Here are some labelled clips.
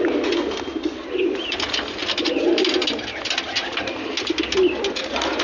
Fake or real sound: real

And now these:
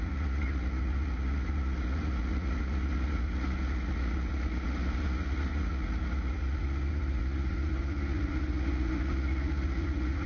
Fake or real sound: fake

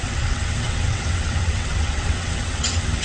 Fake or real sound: fake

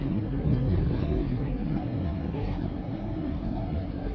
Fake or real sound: fake